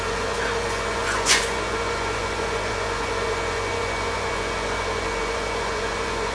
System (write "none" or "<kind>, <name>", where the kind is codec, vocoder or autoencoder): vocoder, Vocos